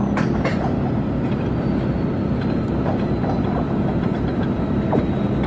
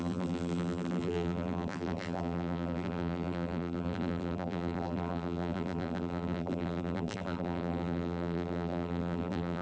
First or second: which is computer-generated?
second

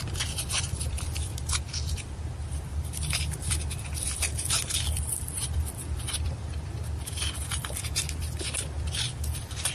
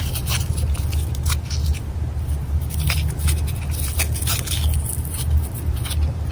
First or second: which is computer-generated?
first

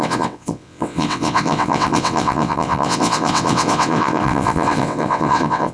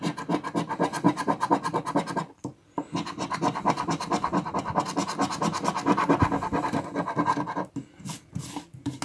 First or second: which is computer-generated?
first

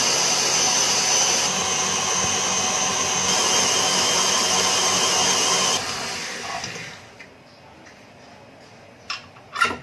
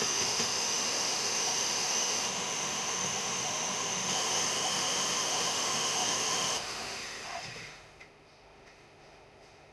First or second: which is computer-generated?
second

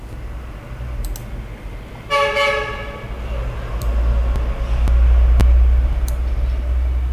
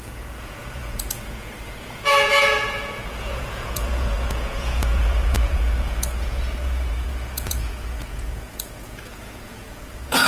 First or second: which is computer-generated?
second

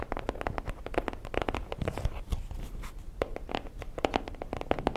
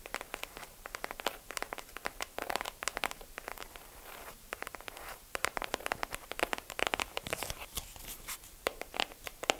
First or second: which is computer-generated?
second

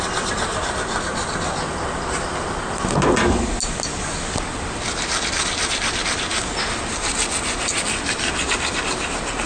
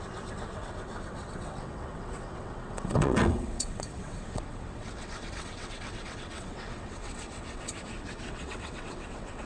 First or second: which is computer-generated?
second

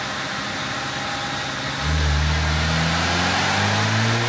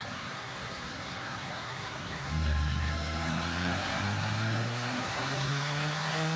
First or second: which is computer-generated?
second